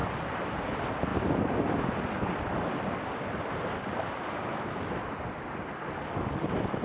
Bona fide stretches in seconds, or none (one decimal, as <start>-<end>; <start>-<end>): 0.0-6.8